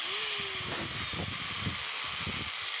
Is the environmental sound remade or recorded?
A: recorded